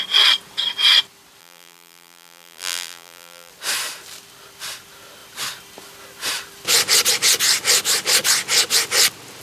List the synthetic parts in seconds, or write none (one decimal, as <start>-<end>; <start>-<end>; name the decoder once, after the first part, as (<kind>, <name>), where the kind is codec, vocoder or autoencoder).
1.4-3.5 (vocoder, BigVGAN v2)